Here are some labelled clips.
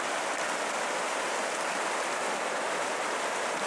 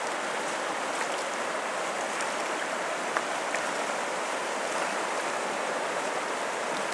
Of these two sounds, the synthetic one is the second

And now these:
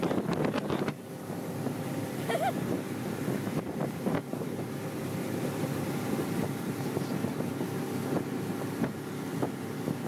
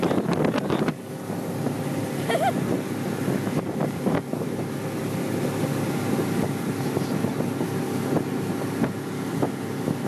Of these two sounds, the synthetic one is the first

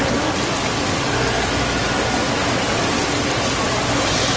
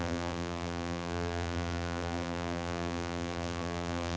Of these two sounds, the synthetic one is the second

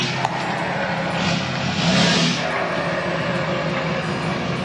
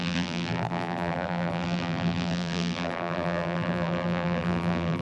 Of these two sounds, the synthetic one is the second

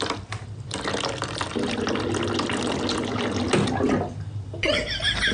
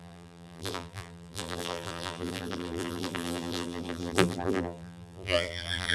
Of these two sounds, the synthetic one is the second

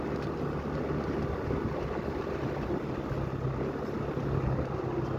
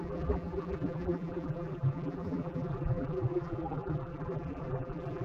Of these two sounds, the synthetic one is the second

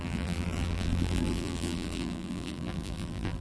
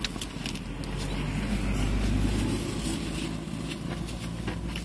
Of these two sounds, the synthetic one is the first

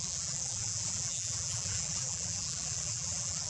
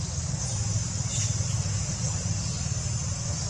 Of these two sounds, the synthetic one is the first